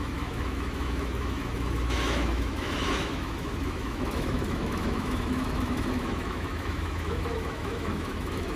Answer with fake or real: fake